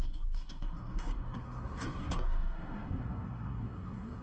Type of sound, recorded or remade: remade